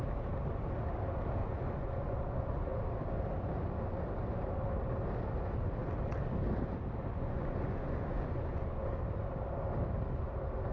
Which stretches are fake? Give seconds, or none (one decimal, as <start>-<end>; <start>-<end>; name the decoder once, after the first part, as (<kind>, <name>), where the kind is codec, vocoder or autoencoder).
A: 1.4-2.6 (vocoder, Vocos); 7.1-8.9